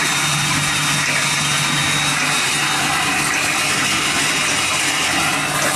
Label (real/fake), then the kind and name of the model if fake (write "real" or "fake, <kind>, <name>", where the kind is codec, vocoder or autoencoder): real